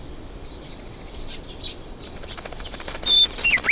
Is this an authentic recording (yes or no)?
no